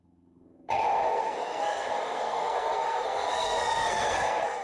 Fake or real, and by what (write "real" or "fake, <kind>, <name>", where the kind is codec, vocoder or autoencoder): fake, codec, SNAC